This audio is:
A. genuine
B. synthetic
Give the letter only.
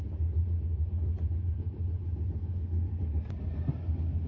A